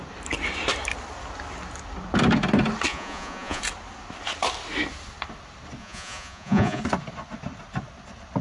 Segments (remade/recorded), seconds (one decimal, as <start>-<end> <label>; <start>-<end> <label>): 0.0-2.9 recorded; 2.9-3.6 remade; 3.6-5.8 recorded; 5.8-6.8 remade; 6.8-8.4 recorded